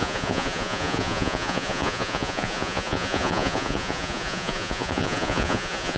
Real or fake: fake